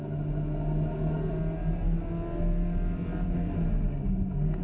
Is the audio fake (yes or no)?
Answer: no